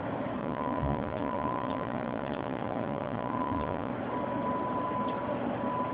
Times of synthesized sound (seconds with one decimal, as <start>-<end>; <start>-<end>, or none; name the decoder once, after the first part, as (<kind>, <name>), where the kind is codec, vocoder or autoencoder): 0.4-3.9 (vocoder, Vocos)

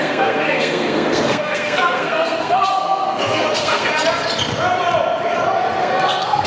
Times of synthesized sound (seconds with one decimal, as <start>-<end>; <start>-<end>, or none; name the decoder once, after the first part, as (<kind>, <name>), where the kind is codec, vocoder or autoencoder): 0.0-3.9 (codec, SNAC); 5.8-6.5

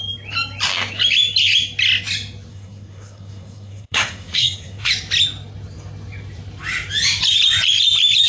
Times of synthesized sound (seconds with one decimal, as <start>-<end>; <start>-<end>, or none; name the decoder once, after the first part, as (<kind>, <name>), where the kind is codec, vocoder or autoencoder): 2.5-4.9 (codec, SNAC)

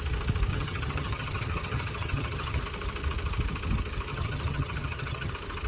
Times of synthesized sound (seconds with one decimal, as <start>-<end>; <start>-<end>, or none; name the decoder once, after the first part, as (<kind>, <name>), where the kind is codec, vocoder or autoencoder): 0.5-2.6 (vocoder, HiFi-GAN); 4.1-5.3

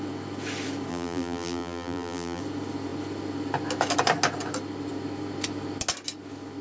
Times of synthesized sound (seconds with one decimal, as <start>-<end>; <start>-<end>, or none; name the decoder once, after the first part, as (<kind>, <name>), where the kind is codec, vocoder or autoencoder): 0.9-2.4 (vocoder, BigVGAN v2)

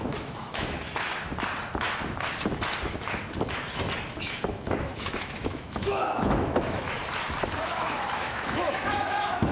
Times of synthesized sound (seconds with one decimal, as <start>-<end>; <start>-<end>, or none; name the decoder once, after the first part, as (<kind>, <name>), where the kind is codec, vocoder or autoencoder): 0.0-1.1 (autoencoder, DAC-VAE); 4.2-7.0; 7.6-9.5

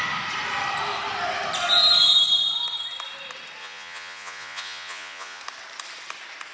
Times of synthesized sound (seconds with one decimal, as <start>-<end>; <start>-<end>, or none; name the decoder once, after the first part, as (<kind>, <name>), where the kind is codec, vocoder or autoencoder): 3.6-5.4 (vocoder, Vocos)

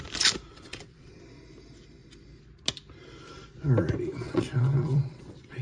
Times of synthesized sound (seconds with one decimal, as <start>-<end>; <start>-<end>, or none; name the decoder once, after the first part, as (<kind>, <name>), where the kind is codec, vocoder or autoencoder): 0.5-1.2 (vocoder, WaveNeXt); 4.2-5.6